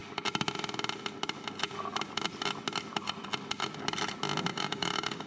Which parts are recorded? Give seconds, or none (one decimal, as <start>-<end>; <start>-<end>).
0.0-4.5